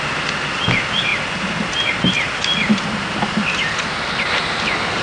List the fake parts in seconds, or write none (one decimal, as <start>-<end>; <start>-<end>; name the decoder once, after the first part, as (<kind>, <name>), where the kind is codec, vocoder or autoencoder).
none